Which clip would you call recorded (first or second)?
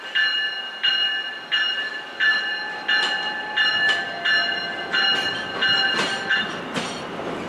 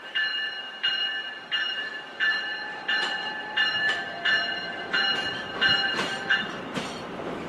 first